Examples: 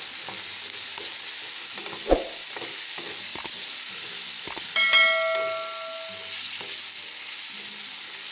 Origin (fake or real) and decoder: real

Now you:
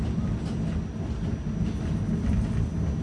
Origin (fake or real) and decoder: real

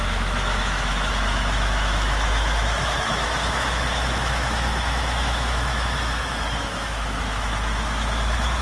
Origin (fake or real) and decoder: fake, autoencoder, DAC-VAE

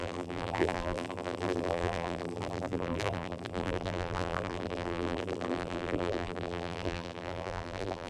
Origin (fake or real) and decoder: fake, vocoder, BigVGAN v2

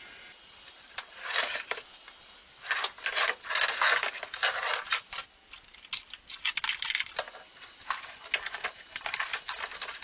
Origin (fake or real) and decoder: real